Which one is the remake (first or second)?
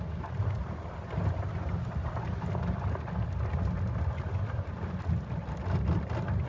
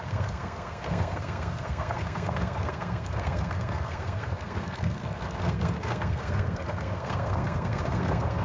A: second